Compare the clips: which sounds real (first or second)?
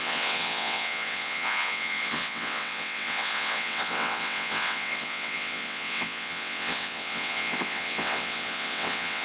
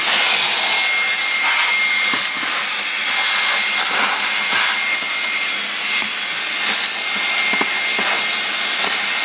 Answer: second